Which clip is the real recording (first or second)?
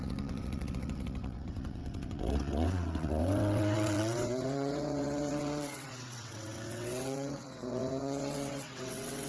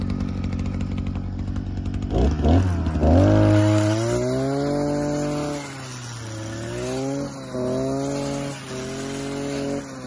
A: second